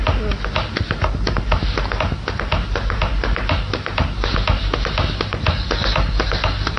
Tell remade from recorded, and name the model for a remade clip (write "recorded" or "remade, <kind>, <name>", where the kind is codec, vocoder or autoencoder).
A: recorded